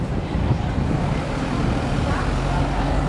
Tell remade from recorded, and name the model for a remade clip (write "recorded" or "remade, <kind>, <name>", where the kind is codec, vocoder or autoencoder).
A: recorded